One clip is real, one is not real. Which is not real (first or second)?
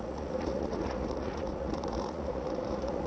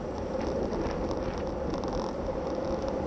first